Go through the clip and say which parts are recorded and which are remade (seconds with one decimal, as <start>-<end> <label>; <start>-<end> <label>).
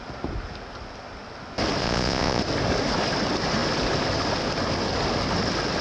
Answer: 0.0-1.8 recorded; 1.8-2.4 remade; 2.4-5.8 recorded